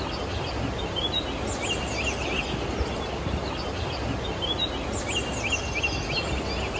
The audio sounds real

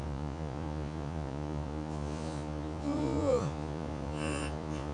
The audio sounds fake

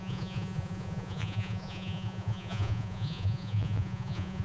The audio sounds fake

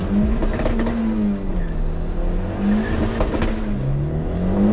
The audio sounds real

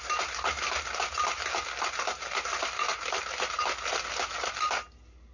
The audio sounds real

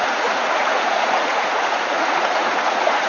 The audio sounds fake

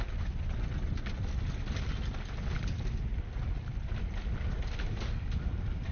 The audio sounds real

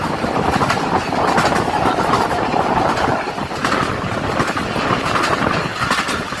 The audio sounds real